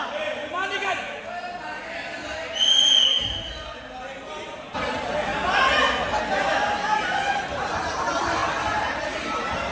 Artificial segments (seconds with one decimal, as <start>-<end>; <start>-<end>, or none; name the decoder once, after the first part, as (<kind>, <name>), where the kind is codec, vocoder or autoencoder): 0.0-1.2 (vocoder, BigVGAN v2); 4.5-5.3; 6.5-9.7